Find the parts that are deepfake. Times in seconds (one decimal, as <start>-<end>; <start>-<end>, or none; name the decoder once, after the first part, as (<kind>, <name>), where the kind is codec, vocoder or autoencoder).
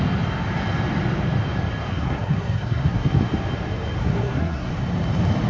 1.9-3.1 (codec, SNAC); 4.0-4.7